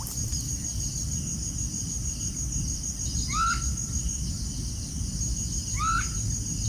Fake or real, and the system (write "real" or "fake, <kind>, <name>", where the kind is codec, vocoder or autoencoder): real